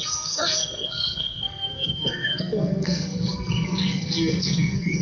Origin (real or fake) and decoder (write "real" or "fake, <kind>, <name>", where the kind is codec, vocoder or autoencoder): fake, codec, SNAC